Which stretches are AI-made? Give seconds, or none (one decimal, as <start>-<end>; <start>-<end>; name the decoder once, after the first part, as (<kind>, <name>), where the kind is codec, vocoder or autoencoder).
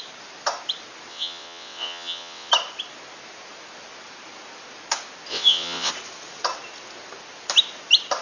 1.1-2.5 (vocoder, WaveNeXt); 5.3-5.9